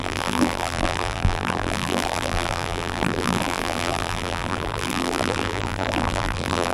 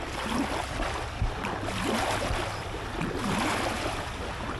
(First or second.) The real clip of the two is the second